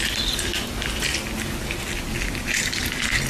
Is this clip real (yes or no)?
yes